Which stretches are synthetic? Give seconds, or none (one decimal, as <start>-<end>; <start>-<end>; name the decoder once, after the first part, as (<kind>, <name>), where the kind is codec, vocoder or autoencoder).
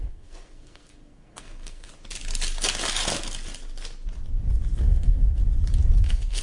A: 0.0-1.9 (codec, SNAC); 4.8-5.4; 6.0-6.4